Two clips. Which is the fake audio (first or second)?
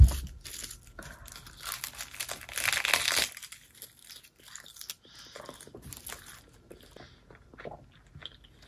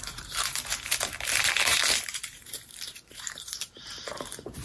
second